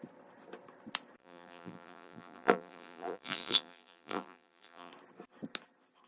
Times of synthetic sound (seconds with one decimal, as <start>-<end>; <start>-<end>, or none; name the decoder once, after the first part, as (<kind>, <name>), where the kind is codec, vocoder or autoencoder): 1.2-4.9 (vocoder, BigVGAN v2)